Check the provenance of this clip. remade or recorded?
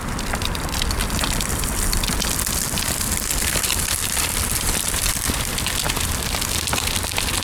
remade